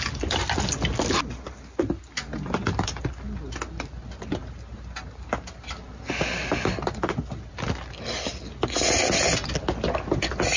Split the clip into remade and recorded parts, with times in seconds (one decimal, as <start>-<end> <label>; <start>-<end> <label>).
0.0-10.6 recorded